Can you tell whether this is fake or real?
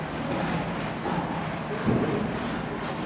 real